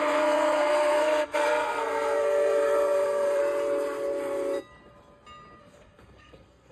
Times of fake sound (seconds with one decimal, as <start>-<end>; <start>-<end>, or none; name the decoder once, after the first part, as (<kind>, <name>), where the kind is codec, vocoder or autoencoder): 0.0-3.4 (codec, SNAC); 5.6-6.7